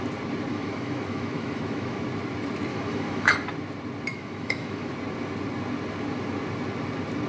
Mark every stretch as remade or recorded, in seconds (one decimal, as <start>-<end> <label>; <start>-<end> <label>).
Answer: 0.0-0.5 recorded; 0.5-2.0 remade; 2.0-2.7 recorded; 2.7-3.3 remade; 3.3-4.1 recorded; 4.1-4.9 remade; 4.9-7.3 recorded